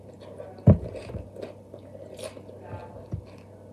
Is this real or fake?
real